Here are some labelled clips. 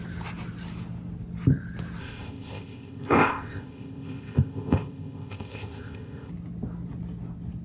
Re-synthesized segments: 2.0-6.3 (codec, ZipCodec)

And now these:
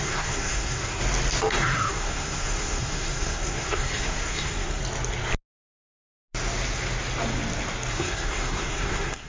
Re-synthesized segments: 0.0-1.0 (codec, SNAC); 1.5-4.8; 7.9-9.3

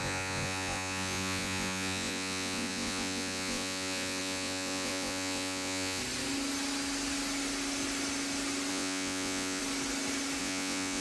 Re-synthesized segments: 0.0-6.0 (vocoder, Vocos); 8.7-9.6; 10.4-11.0

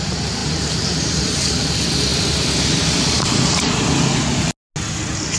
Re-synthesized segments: 0.4-1.2 (vocoder, BigVGAN v2); 2.1-3.4